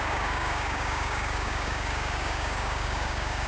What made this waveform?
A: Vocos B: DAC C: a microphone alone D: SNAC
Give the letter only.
B